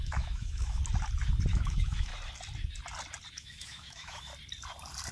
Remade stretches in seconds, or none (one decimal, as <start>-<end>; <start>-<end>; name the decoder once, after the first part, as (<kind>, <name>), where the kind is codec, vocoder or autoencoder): 0.0-0.8 (autoencoder, DAC-VAE); 1.5-2.1; 3.3-4.3